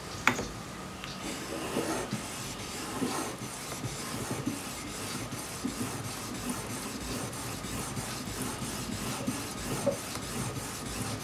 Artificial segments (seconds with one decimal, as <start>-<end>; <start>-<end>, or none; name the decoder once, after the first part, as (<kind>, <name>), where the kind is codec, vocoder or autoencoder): none